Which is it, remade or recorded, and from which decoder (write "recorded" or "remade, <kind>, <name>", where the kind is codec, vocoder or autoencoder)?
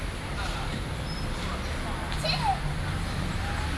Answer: recorded